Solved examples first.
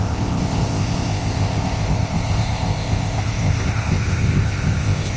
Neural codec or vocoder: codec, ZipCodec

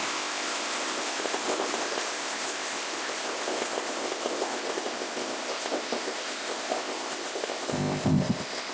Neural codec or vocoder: codec, ZipCodec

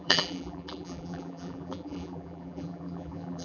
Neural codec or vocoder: vocoder, BigVGAN v2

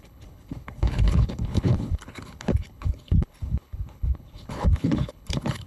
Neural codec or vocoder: codec, HILCodec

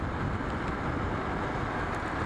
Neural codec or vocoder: none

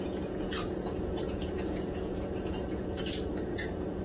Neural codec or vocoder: vocoder, Vocos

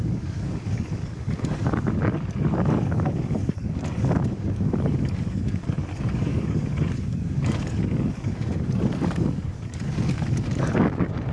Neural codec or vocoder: codec, DAC